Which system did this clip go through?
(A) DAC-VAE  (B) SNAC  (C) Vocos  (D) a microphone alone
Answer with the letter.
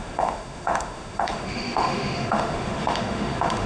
A